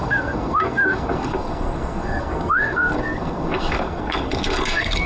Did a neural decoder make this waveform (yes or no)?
yes